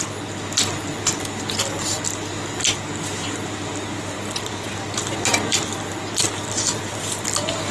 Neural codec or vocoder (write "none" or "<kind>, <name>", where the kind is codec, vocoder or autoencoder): none